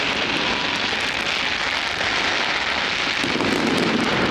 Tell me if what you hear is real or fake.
real